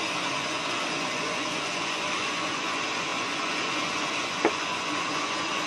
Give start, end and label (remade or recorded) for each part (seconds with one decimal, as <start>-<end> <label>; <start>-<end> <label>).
0.0-5.7 remade